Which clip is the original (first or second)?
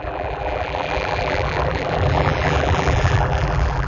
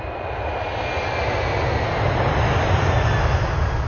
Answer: second